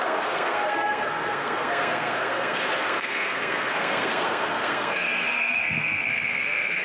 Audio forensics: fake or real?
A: fake